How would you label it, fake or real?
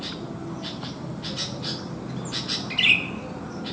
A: real